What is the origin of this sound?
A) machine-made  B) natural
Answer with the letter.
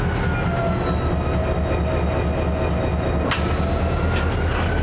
B